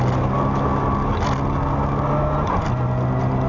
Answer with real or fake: real